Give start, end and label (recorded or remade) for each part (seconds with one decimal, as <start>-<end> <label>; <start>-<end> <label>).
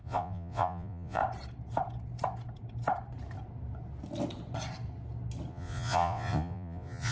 0.0-1.2 remade; 1.2-5.5 recorded; 5.5-7.1 remade